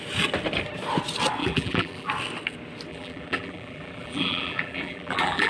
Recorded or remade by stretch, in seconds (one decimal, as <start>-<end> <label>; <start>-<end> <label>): 0.0-1.4 recorded; 1.4-2.1 remade; 2.1-2.9 recorded; 2.9-5.5 remade